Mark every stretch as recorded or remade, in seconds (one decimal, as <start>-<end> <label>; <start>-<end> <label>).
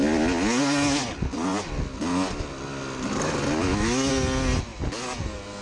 0.0-3.6 recorded; 3.6-4.1 remade; 4.1-5.6 recorded